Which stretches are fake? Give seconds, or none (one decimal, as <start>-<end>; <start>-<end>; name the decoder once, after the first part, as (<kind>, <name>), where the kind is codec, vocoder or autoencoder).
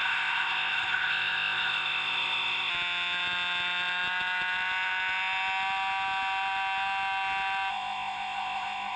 0.0-2.7 (codec, ZipCodec); 7.7-9.0